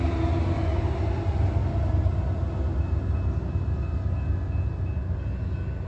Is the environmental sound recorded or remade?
recorded